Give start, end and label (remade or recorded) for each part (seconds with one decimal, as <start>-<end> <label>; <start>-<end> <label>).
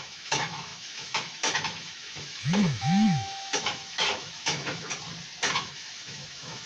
0.0-4.9 remade; 4.9-5.5 recorded; 5.5-6.7 remade